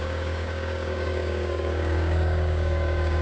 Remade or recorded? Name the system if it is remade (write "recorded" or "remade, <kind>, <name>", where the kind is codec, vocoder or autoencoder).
remade, codec, DAC